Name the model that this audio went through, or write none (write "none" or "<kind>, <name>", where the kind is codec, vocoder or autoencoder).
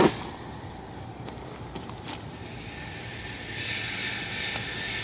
none